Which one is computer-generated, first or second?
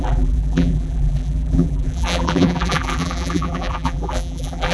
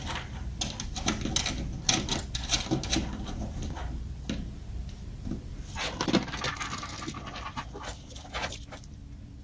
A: first